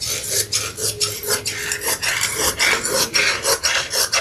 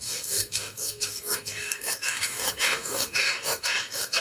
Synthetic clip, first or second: second